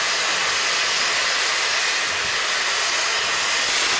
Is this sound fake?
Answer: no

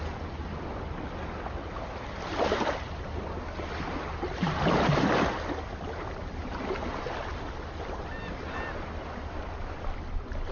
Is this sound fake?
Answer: no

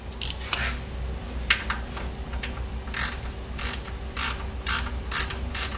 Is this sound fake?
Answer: no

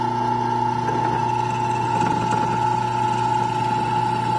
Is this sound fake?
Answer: no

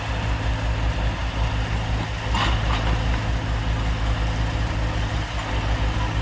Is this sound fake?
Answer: no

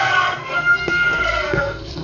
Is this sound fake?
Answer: yes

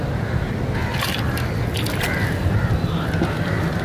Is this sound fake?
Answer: no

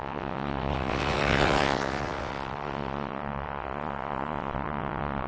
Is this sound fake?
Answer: yes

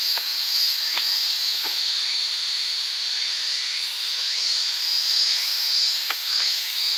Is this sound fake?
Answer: yes